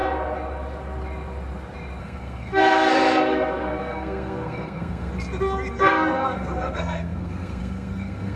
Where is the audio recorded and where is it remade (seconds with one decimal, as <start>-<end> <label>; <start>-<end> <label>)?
0.0-2.0 recorded; 2.0-5.1 remade; 5.1-5.7 recorded; 5.7-8.4 remade